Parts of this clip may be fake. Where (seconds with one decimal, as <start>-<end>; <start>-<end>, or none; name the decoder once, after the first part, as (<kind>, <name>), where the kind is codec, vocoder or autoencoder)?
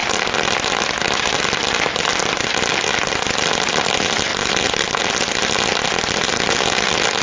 4.3-5.0 (vocoder, BigVGAN v2)